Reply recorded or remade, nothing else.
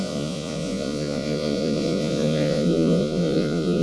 remade